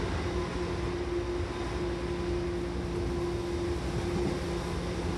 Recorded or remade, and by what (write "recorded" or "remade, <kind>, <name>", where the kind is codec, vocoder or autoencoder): recorded